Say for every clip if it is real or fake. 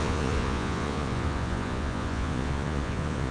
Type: fake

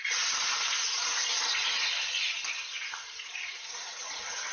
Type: real